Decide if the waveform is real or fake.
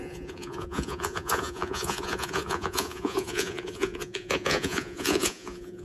fake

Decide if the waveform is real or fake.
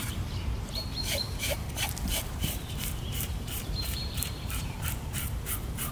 fake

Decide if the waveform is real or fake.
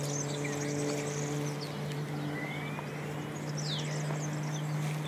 real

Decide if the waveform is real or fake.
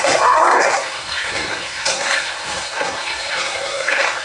fake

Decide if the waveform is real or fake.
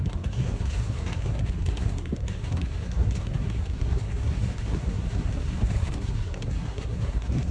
fake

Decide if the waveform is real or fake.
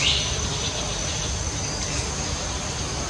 real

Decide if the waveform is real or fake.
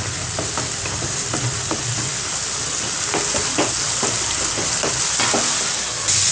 real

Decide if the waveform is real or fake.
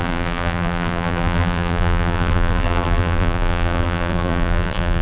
fake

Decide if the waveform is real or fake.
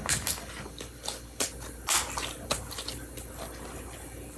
real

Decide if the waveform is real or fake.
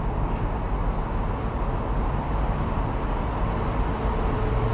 real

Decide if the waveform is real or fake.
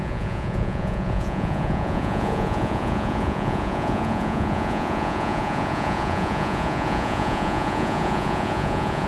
fake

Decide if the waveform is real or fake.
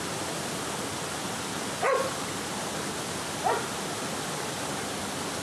real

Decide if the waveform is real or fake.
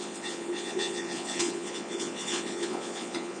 fake